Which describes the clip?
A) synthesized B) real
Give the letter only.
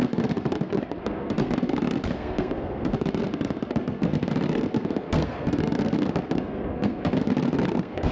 A